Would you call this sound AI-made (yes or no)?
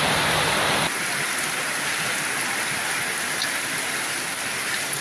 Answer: no